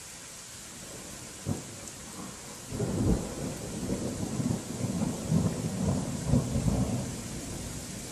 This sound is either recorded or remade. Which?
recorded